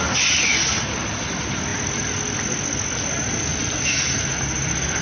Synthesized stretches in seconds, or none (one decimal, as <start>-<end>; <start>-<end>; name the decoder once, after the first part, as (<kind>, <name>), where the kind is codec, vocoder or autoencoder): none